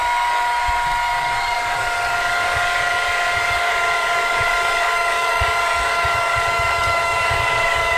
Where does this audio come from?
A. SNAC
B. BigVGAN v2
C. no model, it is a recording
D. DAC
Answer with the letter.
D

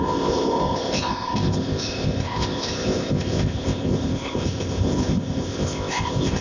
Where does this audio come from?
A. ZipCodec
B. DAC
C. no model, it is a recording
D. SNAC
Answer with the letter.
A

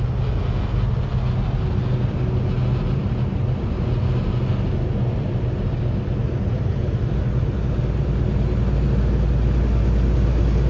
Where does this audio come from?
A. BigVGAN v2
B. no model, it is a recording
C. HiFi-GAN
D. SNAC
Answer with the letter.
B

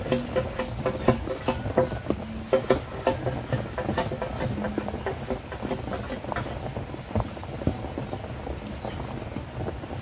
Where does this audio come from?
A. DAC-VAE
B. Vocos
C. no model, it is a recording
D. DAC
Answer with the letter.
C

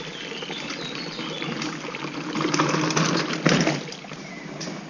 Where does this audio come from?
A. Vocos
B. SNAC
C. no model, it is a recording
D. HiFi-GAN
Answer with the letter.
C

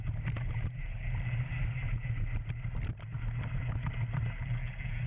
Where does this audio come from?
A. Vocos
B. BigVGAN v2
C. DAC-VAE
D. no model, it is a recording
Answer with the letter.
D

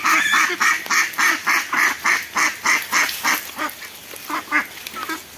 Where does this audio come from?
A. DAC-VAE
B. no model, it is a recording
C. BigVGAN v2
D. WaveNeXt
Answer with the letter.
B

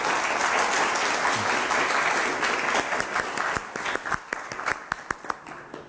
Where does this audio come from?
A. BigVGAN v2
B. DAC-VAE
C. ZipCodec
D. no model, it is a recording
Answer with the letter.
D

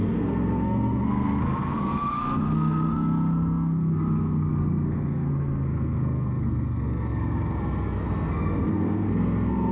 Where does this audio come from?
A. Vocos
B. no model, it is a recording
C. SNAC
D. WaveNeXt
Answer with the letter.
C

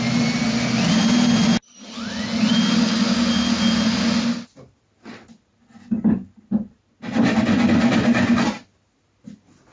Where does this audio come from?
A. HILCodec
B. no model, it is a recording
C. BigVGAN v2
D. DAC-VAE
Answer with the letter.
B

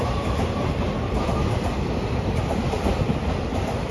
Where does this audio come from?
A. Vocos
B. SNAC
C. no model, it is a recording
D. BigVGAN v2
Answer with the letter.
C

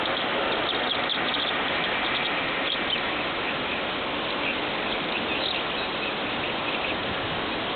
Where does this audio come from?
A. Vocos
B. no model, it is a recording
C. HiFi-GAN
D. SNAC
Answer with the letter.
B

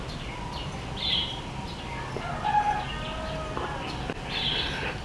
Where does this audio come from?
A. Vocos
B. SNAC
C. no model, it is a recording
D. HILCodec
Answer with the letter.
C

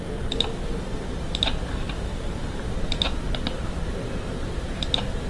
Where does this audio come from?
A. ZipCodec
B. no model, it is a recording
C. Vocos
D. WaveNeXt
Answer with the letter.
B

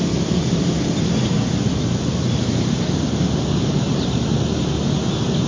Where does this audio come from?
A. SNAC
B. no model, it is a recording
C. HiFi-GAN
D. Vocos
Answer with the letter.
B